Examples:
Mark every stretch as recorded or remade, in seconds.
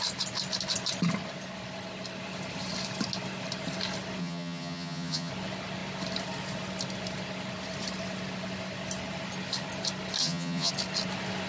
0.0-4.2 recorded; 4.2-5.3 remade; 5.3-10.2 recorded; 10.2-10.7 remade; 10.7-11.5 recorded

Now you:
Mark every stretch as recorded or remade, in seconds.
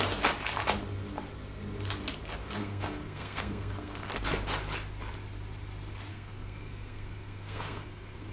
0.0-2.6 recorded; 2.6-4.1 remade; 4.1-6.1 recorded; 6.1-8.3 remade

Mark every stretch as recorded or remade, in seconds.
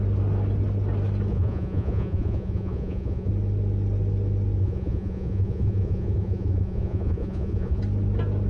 0.0-1.3 recorded; 1.3-3.3 remade; 3.3-4.6 recorded; 4.6-7.8 remade; 7.8-8.5 recorded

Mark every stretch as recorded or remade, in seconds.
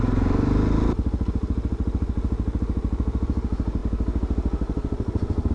0.0-5.5 recorded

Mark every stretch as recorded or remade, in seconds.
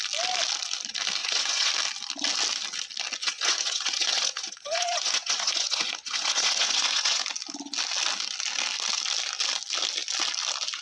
0.0-1.2 recorded; 1.2-1.7 remade; 1.7-3.2 recorded; 3.2-7.2 remade; 7.2-10.8 recorded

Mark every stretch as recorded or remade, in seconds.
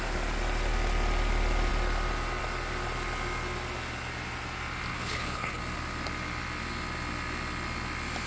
0.0-4.9 recorded; 4.9-5.6 remade; 5.6-8.3 recorded